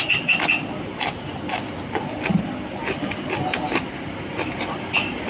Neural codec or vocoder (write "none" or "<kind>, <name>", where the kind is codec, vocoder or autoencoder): none